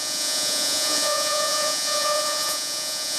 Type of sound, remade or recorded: remade